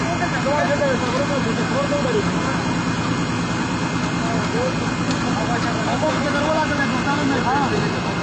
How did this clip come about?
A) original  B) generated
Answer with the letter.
A